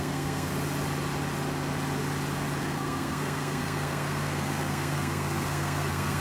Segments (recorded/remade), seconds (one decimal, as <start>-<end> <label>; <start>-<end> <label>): 0.0-0.5 remade; 0.5-2.6 recorded; 2.6-6.2 remade